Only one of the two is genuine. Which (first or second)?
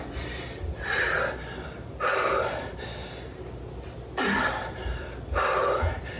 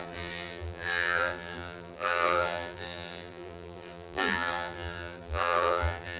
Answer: first